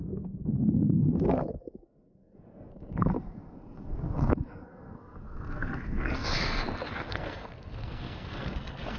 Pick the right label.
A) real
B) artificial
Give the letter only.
B